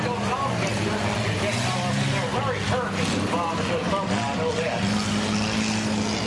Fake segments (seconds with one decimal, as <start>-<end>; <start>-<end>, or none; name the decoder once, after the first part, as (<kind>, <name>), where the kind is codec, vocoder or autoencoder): none